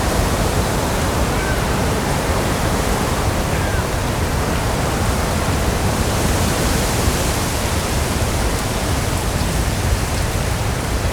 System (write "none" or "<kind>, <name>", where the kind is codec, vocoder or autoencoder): vocoder, BigVGAN v2